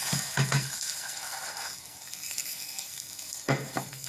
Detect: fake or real fake